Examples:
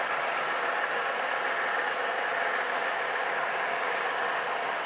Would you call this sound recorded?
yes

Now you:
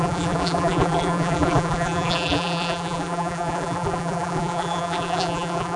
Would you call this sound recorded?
no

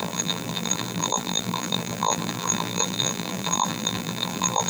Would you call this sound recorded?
no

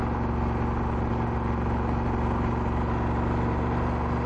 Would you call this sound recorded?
yes